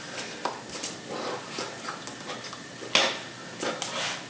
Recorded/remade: recorded